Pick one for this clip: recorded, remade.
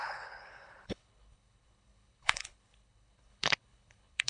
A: remade